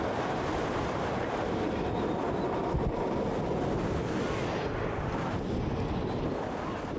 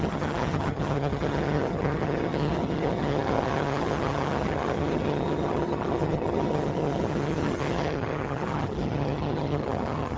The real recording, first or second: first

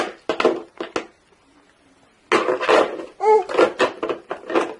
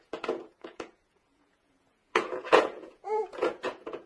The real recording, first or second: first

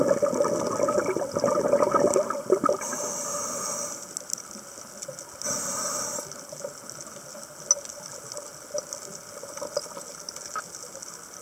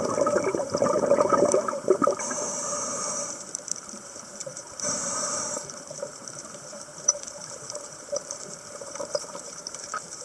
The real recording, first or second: first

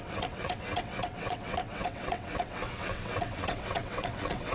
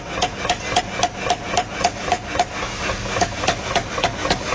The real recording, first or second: second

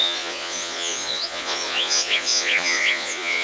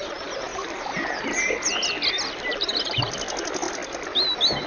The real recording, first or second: second